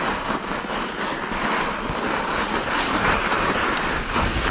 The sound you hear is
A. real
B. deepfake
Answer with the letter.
A